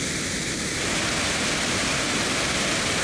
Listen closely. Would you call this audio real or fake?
fake